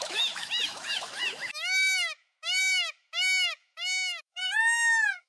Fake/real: fake